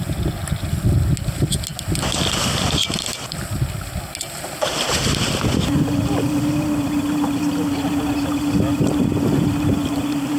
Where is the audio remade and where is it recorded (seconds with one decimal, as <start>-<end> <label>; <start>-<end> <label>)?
0.0-10.4 recorded